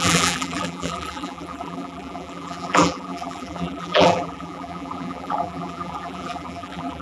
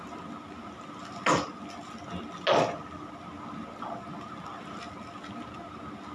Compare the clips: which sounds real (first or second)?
second